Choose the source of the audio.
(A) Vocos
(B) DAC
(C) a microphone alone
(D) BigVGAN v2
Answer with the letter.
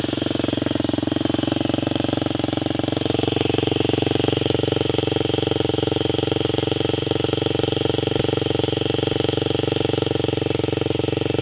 C